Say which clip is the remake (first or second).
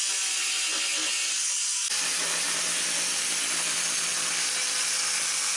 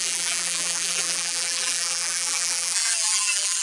second